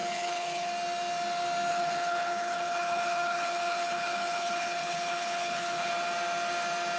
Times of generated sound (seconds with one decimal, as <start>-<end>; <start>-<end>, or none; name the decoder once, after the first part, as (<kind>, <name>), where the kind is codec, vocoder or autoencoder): 0.0-0.7 (codec, HILCodec); 1.7-5.9